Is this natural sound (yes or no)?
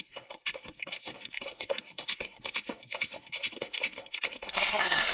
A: no